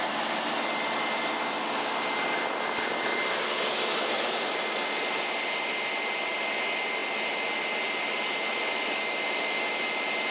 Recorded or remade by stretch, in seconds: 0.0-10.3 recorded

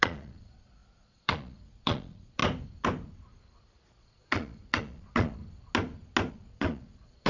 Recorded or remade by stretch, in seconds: 0.0-2.4 remade; 2.4-4.0 recorded; 4.0-5.4 remade; 5.4-6.3 recorded; 6.3-7.3 remade

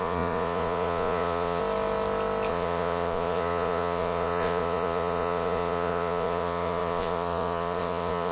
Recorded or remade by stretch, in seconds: 0.0-1.6 remade; 1.6-2.5 recorded; 2.5-8.3 remade

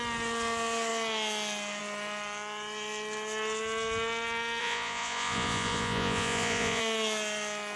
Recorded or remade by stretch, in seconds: 0.0-4.6 recorded; 4.6-6.8 remade; 6.8-7.8 recorded